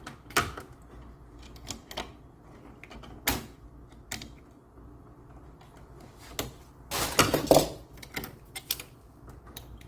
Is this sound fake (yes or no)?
no